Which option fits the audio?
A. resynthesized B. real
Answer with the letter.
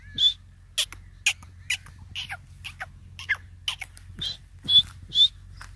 B